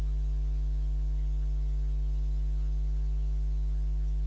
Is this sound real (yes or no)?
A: yes